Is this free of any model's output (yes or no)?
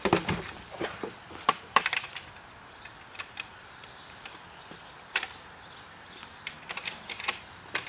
no